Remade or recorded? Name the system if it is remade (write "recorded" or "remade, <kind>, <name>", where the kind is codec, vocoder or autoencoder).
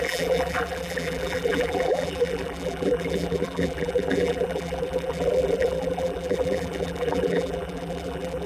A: remade, vocoder, BigVGAN v2